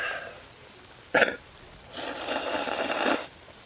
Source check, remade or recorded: remade